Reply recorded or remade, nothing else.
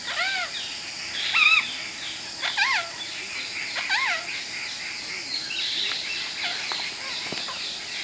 remade